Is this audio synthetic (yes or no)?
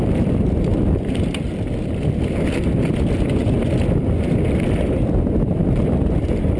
no